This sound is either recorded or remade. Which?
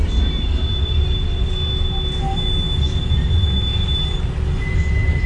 recorded